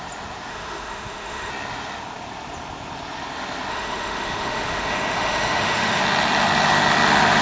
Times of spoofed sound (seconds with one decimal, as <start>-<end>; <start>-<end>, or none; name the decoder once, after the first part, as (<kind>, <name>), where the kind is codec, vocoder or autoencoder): 0.5-1.5 (autoencoder, DAC-VAE); 3.7-6.0